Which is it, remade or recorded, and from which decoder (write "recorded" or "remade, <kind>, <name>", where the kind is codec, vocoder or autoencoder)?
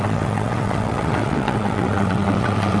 remade, vocoder, WaveNeXt